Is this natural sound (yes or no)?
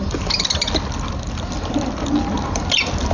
yes